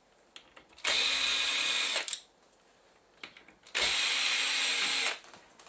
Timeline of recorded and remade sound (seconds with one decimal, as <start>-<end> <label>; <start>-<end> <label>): 0.0-5.7 recorded